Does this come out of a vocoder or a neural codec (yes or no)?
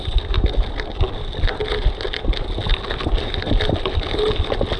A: no